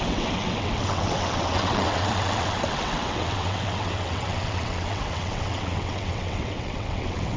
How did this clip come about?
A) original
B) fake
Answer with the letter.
B